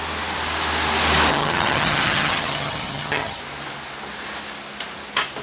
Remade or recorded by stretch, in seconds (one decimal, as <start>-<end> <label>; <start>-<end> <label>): 0.0-1.3 recorded; 1.3-3.4 remade; 3.4-5.4 recorded